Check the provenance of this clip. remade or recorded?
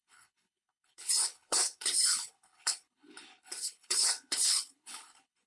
remade